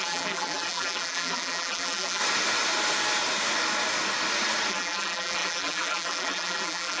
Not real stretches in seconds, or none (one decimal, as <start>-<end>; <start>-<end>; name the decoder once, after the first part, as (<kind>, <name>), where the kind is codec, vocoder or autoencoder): 0.0-2.2 (vocoder, BigVGAN v2); 4.7-7.0